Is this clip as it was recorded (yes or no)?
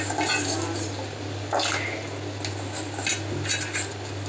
yes